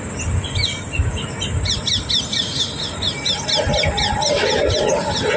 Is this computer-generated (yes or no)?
no